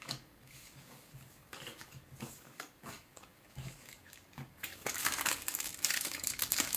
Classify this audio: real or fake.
fake